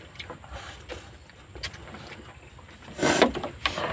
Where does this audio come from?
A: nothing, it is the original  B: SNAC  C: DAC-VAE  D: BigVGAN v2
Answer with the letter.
A